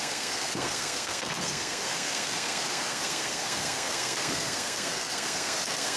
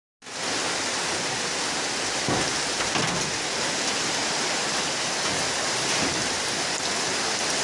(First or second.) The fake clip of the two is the first